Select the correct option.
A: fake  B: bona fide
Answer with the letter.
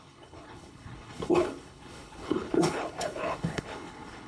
A